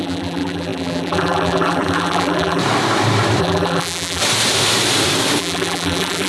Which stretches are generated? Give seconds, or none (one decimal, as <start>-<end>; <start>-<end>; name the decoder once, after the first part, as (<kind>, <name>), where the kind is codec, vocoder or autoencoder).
0.0-2.6 (vocoder, BigVGAN v2); 3.4-4.2; 5.4-6.3